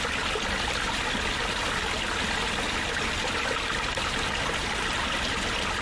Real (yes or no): yes